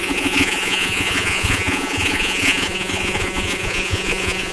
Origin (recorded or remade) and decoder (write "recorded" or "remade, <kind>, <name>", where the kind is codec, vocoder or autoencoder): remade, vocoder, Vocos